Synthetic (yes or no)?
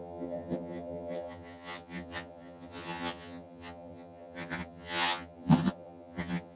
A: yes